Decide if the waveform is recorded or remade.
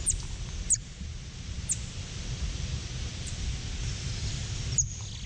recorded